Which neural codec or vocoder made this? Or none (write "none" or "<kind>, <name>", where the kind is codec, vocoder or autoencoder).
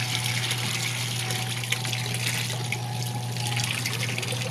none